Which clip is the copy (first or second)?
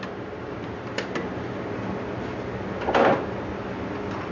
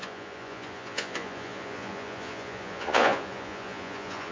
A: second